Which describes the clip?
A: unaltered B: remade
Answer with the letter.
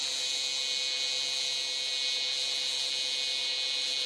A